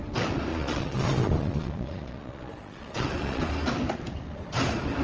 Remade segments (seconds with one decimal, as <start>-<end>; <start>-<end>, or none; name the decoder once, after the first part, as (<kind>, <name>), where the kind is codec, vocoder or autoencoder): 0.5-3.5 (vocoder, Vocos)

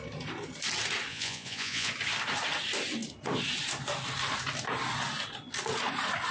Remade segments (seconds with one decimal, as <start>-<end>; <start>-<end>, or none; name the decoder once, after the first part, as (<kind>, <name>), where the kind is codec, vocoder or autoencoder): 1.1-1.9 (vocoder, Vocos)

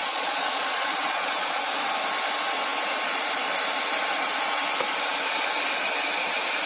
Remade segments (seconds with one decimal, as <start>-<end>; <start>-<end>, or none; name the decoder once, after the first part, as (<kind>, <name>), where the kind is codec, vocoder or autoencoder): 0.0-1.6 (vocoder, Vocos)

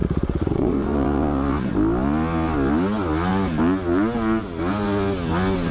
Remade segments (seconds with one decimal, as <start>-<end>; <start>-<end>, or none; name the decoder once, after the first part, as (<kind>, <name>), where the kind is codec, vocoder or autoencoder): 0.0-1.7 (vocoder, Vocos)